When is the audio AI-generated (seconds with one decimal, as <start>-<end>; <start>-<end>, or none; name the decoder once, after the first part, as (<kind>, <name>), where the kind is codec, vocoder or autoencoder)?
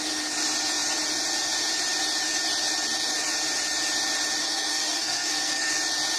4.4-5.7 (codec, SNAC)